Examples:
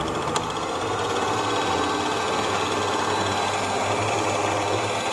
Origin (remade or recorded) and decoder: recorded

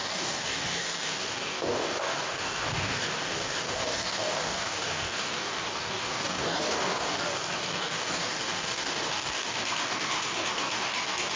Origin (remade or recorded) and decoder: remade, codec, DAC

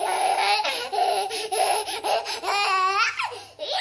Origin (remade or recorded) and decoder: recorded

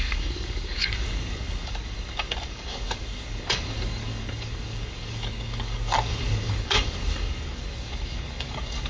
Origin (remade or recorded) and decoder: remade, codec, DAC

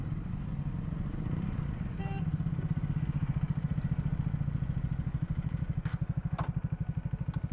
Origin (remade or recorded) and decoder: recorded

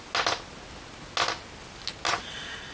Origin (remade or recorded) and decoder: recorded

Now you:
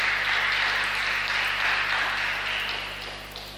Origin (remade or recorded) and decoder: recorded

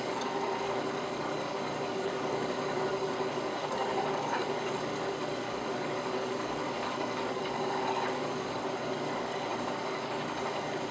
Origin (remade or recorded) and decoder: remade, codec, DAC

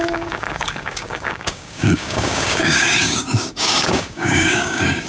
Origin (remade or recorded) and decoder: remade, codec, DAC